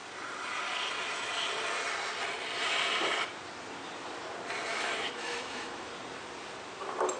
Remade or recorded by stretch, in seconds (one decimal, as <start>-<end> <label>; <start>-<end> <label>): 0.0-4.7 recorded; 4.7-5.9 remade; 5.9-7.2 recorded